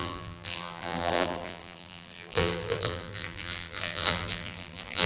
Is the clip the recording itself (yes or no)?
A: no